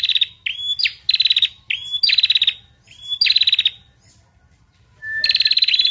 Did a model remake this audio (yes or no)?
no